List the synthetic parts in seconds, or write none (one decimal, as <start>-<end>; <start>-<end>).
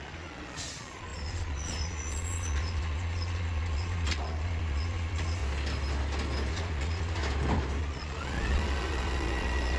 0.0-5.4; 6.5-7.2; 7.8-9.8